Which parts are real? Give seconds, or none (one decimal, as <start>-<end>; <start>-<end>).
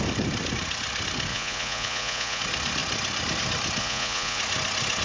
0.0-1.3; 2.4-3.8; 4.4-5.0